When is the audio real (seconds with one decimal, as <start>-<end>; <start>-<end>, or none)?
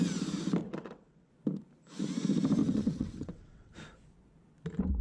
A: 0.0-0.6; 1.3-2.6; 3.7-5.0